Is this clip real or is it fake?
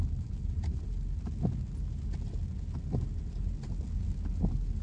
real